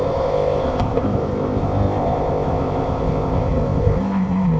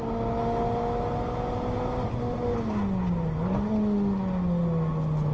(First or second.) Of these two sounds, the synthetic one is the first